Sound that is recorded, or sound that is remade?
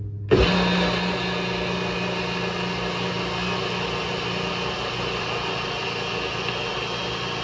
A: recorded